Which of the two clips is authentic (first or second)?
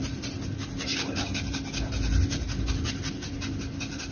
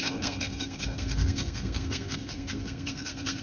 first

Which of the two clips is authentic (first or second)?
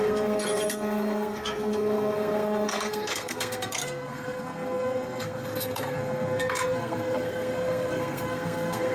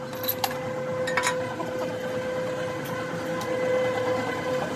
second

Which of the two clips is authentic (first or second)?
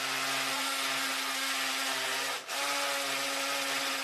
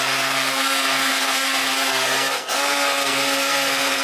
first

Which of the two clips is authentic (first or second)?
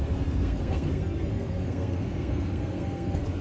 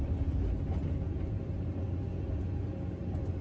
second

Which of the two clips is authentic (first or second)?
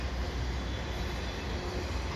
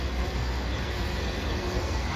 first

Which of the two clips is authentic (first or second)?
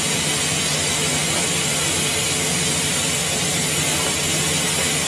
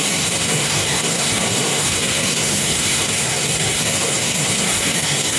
first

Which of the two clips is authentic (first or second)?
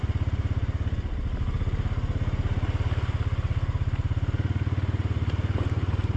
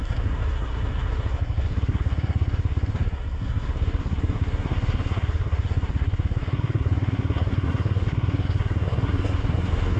first